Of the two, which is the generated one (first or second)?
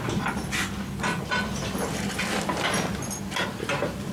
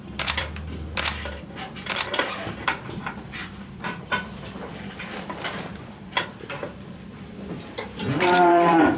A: second